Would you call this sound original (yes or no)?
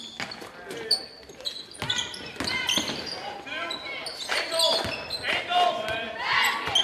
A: yes